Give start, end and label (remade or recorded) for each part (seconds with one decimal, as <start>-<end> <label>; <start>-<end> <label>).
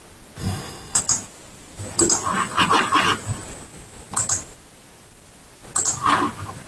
0.0-0.4 recorded; 0.4-1.0 remade; 1.0-6.7 recorded